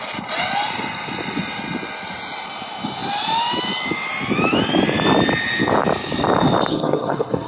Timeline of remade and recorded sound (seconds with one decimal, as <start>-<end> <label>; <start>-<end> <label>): 0.0-6.7 recorded; 6.7-7.5 remade